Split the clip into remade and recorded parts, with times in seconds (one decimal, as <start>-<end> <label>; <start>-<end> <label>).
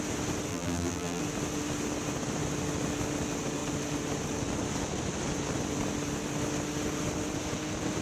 0.0-0.5 recorded; 0.5-1.2 remade; 1.2-8.0 recorded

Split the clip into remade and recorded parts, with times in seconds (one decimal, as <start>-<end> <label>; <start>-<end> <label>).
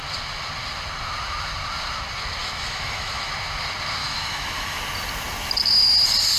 0.0-2.4 recorded; 2.4-3.3 remade; 3.3-4.0 recorded; 4.0-4.8 remade; 4.8-6.4 recorded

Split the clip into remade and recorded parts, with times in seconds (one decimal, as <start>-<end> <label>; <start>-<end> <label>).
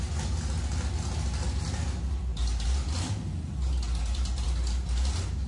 0.0-5.5 recorded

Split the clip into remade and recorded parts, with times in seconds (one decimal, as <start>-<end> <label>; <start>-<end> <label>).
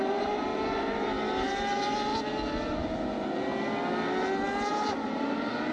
0.0-0.5 remade; 0.5-1.4 recorded; 1.4-2.1 remade; 2.1-4.7 recorded; 4.7-5.7 remade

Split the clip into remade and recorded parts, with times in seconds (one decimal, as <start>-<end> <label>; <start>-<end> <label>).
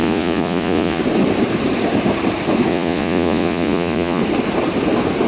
0.0-1.0 remade; 1.0-2.7 recorded; 2.7-4.2 remade; 4.2-5.3 recorded